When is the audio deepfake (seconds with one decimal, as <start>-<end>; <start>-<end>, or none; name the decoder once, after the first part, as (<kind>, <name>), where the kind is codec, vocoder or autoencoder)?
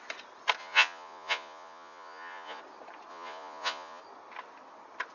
0.6-2.6 (vocoder, Vocos); 3.1-4.0